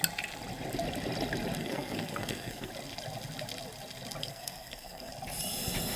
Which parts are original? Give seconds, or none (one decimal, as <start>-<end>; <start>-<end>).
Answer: 0.0-1.6; 2.7-4.2; 5.1-6.0